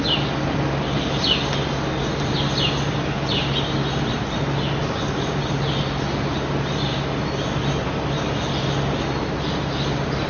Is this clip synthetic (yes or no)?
no